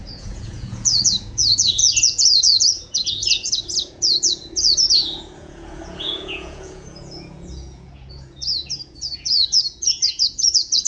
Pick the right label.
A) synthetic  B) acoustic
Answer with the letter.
A